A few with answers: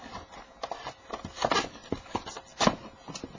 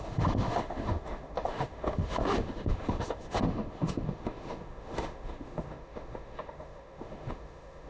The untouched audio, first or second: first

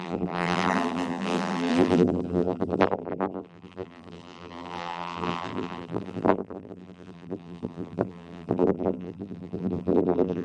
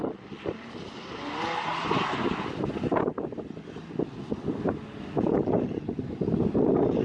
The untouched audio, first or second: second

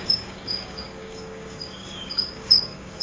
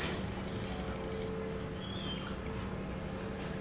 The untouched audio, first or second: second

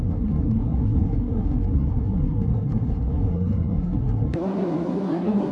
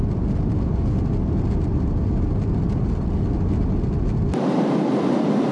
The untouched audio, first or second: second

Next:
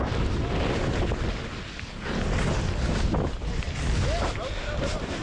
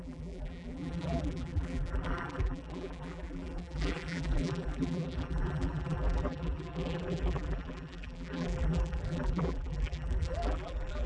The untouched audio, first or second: first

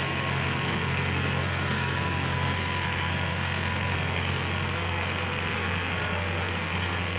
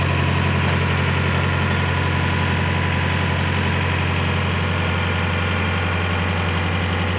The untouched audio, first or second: second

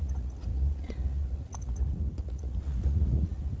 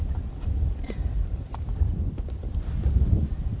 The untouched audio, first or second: second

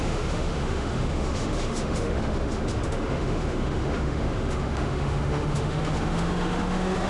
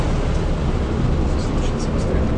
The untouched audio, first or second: second